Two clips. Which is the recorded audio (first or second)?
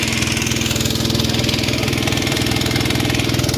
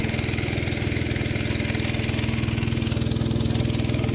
second